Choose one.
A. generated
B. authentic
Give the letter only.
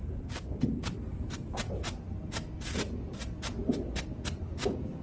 B